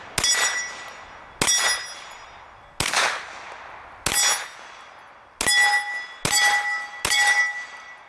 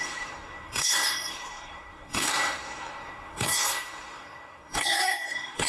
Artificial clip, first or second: second